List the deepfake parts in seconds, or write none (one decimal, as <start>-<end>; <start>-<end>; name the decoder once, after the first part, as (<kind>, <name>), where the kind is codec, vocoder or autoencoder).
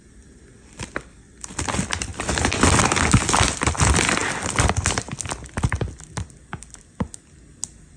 none